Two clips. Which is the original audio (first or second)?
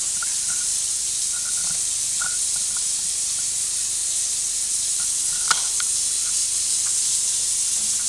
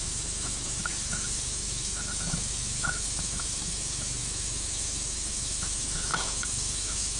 first